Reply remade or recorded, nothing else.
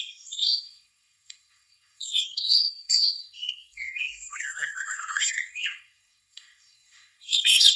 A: remade